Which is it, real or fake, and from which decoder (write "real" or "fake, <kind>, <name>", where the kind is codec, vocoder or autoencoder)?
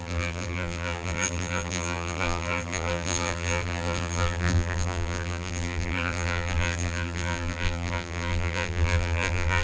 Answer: fake, vocoder, BigVGAN v2